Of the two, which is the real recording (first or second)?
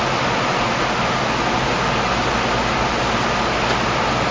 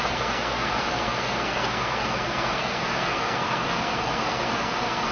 first